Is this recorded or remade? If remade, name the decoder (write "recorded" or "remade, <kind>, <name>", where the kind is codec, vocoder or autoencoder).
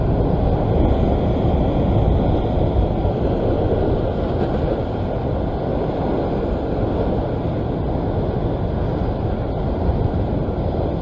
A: recorded